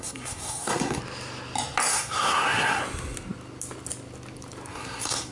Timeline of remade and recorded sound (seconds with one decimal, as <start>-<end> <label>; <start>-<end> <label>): 0.0-1.0 remade; 1.0-1.9 recorded; 1.9-2.8 remade; 2.8-4.7 recorded; 4.7-5.3 remade